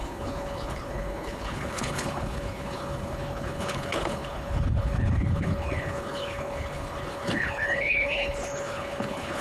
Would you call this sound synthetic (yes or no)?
yes